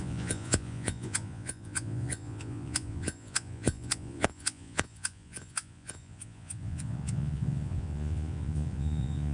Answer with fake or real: fake